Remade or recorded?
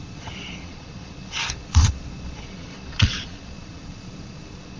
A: remade